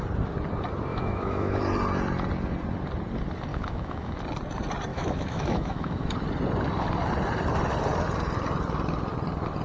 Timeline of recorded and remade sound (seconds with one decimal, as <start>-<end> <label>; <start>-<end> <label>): 0.0-0.9 recorded; 0.9-1.6 remade; 1.6-3.5 recorded; 3.5-4.2 remade; 4.2-4.9 recorded; 4.9-6.1 remade; 6.1-9.6 recorded